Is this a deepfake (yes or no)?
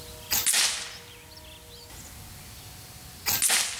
no